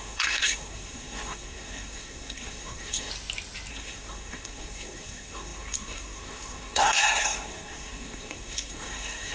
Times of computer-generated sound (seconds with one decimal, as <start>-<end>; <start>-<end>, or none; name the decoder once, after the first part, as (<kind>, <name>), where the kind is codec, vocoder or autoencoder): 0.0-3.1 (codec, SNAC); 3.7-9.3